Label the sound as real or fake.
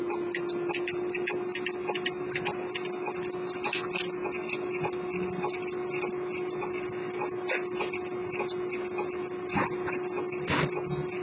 real